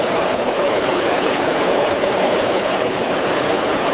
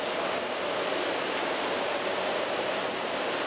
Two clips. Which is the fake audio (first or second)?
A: first